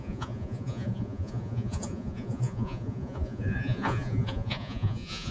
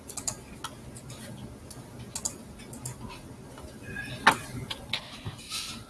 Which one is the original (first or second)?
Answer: second